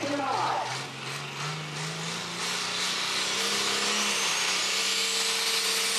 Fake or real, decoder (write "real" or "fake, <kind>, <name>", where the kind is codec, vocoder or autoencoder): real